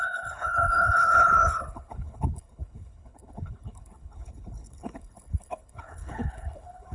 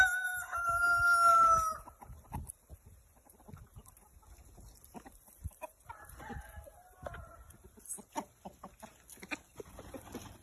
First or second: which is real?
second